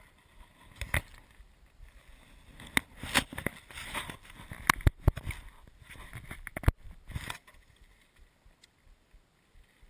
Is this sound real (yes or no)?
yes